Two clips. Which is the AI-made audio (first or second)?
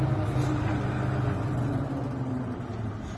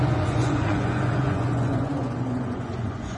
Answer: second